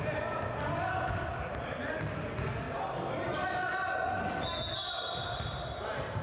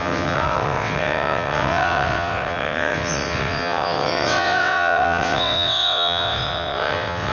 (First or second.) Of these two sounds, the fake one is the second